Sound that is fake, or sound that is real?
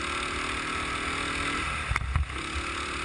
real